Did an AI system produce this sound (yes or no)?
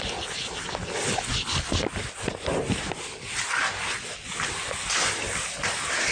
no